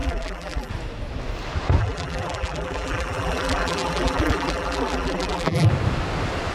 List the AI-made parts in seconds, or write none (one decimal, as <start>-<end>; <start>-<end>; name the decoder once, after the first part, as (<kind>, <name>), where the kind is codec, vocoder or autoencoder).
0.0-0.7 (vocoder, BigVGAN v2); 1.8-5.7